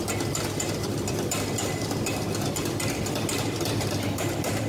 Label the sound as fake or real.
real